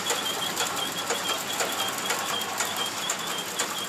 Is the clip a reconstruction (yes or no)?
no